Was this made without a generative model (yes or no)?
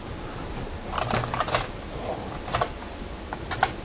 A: yes